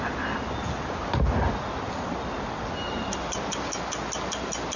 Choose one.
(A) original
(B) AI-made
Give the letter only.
A